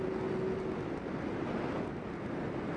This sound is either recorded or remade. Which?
recorded